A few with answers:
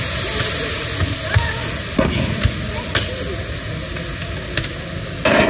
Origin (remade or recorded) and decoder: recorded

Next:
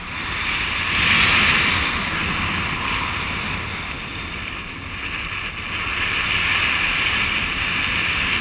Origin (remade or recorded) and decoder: recorded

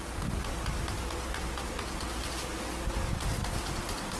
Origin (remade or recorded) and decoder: recorded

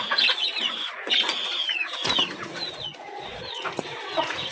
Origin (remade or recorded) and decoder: remade, vocoder, Vocos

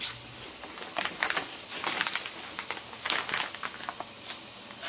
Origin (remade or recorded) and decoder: recorded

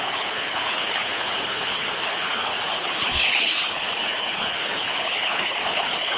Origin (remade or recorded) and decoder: remade, codec, HILCodec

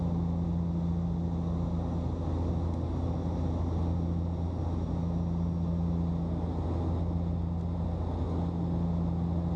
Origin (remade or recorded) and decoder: recorded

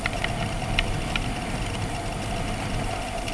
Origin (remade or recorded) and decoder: recorded